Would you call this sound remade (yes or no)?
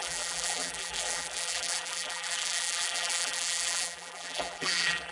yes